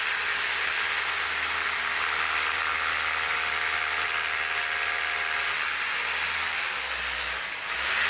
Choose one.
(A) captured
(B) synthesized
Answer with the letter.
A